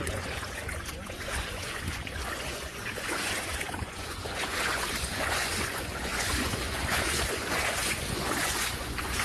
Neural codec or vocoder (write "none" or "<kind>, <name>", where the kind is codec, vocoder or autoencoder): vocoder, Vocos